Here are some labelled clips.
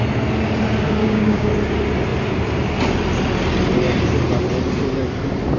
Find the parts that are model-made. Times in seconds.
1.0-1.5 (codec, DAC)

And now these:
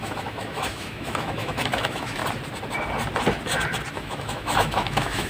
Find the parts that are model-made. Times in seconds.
0.0-2.2 (autoencoder, DAC-VAE); 3.9-5.3